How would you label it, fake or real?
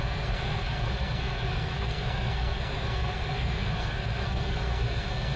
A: fake